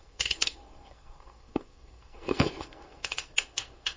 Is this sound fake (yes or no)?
yes